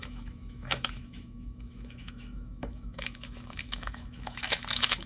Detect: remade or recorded remade